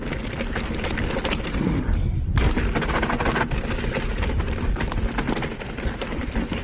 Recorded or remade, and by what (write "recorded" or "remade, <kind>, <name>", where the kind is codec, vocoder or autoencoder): recorded